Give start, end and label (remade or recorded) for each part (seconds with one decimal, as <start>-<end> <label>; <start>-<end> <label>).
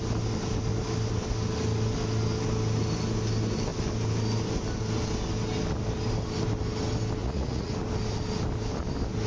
0.0-7.2 recorded; 7.2-7.7 remade; 7.7-9.3 recorded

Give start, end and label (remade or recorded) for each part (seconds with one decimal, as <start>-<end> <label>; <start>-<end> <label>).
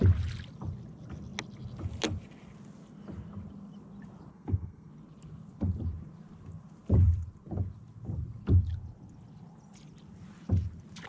0.0-4.3 recorded; 4.3-4.9 remade; 4.9-11.1 recorded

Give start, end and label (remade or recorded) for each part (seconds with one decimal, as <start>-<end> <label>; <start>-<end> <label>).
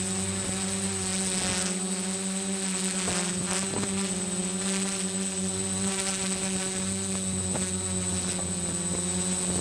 0.0-9.6 recorded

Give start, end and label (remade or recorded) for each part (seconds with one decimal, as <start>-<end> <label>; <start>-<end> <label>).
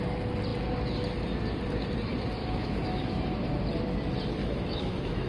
0.0-2.4 recorded; 2.4-3.2 remade; 3.2-4.4 recorded; 4.4-5.3 remade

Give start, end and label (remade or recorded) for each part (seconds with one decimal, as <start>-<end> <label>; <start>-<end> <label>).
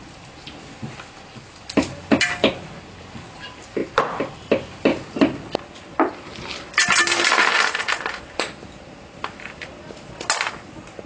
0.0-11.1 recorded